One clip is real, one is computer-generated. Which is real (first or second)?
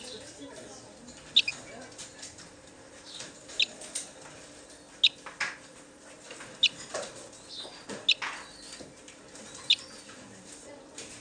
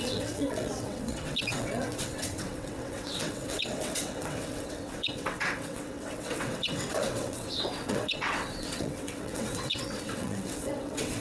first